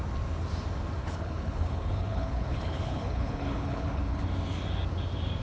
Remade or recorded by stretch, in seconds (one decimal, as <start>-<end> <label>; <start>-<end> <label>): 0.0-1.0 recorded; 1.0-4.2 remade; 4.2-5.4 recorded